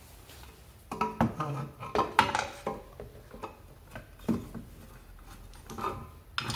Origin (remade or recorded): recorded